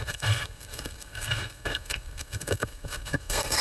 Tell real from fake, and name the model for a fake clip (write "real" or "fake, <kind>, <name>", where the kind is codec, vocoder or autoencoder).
fake, codec, SNAC